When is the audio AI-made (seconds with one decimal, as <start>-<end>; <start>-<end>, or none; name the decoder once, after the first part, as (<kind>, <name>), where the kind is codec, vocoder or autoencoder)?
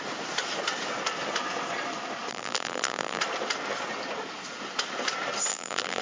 2.3-3.2 (vocoder, BigVGAN v2); 5.5-6.0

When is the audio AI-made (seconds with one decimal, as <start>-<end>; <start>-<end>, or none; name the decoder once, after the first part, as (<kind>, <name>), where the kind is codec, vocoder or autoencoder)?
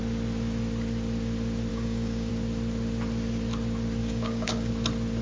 1.7-2.3 (codec, DAC); 4.0-4.7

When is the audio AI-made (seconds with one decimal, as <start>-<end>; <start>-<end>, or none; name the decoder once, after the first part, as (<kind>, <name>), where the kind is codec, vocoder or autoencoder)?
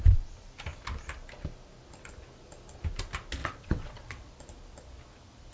3.4-4.3 (vocoder, WaveNeXt)